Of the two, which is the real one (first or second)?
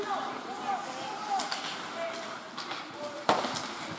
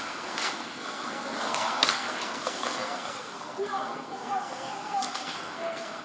first